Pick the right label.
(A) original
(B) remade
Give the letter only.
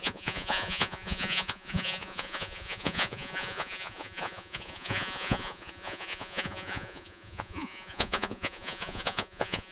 B